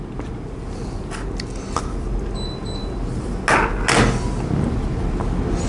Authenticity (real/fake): real